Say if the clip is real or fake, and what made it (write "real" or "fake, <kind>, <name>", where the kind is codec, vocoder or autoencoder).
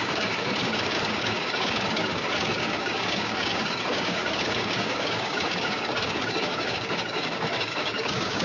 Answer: fake, codec, DAC